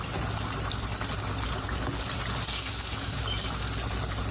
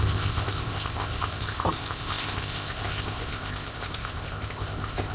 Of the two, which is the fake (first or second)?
second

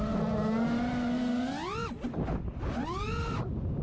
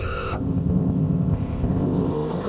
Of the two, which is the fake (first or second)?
second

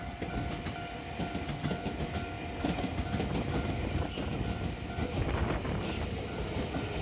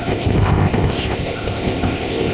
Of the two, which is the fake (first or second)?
second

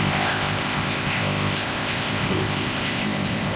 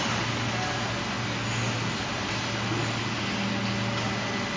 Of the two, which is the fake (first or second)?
first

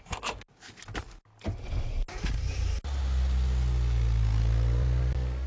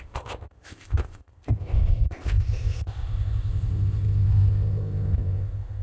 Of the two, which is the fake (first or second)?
second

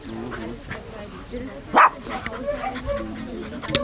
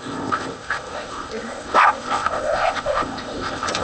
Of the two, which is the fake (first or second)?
second